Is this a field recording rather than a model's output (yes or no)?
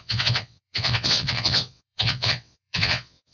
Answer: no